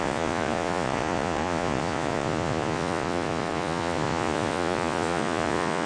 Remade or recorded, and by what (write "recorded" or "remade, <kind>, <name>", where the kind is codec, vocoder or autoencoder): remade, vocoder, Vocos